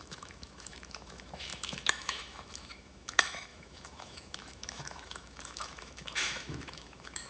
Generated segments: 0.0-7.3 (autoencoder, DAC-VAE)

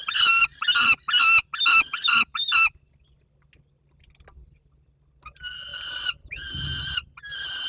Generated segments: 0.4-1.6 (vocoder, BigVGAN v2); 2.0-2.9